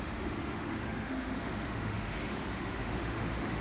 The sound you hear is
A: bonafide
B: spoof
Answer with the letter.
B